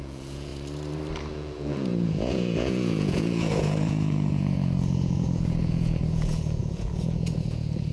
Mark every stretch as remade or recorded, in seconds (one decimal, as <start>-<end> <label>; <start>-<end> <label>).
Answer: 0.0-0.5 remade; 0.5-1.3 recorded; 1.3-7.9 remade